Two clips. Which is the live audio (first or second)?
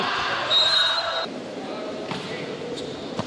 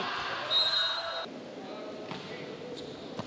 second